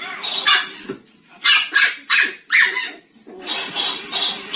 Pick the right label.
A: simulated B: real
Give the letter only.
B